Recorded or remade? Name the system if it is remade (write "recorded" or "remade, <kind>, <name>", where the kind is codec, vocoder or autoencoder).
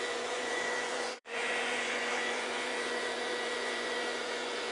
remade, vocoder, Vocos